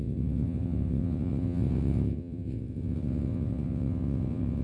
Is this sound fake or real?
fake